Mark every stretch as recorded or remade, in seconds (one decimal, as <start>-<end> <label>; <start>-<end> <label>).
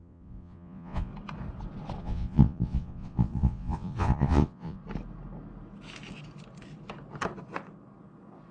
0.0-1.1 remade; 1.1-2.0 recorded; 2.0-4.8 remade; 4.8-8.5 recorded